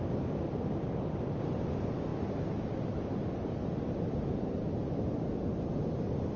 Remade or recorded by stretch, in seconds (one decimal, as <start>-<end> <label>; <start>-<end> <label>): 0.0-6.4 recorded